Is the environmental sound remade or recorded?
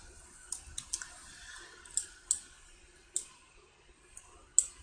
recorded